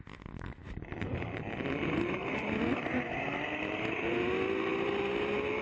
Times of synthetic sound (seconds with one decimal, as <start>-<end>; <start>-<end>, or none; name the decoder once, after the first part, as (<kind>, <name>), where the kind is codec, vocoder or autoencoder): none